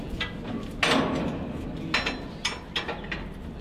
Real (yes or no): yes